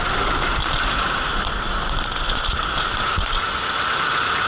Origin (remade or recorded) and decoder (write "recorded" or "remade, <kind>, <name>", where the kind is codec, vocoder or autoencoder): recorded